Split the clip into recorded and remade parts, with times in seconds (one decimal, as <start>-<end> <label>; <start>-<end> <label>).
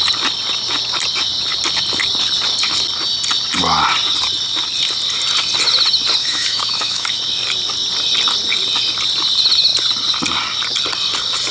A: 0.0-6.2 recorded; 6.2-7.2 remade; 7.2-11.5 recorded